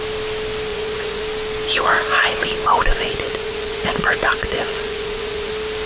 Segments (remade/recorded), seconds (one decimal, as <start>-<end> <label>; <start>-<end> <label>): 0.0-0.7 recorded; 0.7-1.2 remade; 1.2-2.7 recorded; 2.7-5.5 remade; 5.5-5.9 recorded